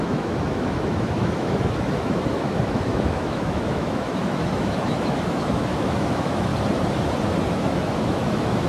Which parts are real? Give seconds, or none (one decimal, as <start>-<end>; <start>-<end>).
6.5-7.5